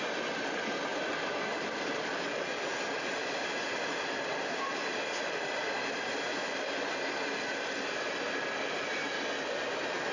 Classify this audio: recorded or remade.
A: recorded